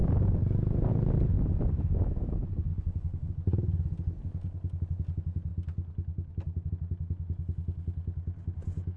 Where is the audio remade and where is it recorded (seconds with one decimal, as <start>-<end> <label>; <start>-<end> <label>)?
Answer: 0.0-2.7 recorded; 2.7-3.3 remade; 3.3-9.0 recorded